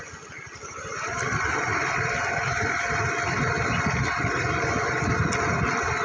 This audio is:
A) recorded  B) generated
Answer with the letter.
A